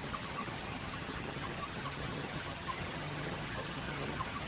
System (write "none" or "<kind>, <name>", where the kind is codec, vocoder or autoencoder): vocoder, HiFi-GAN